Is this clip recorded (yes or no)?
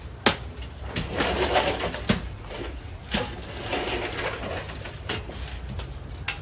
yes